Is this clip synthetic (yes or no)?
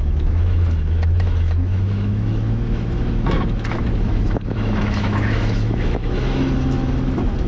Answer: yes